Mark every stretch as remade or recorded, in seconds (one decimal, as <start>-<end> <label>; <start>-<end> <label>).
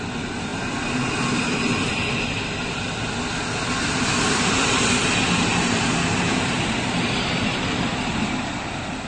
0.0-9.1 recorded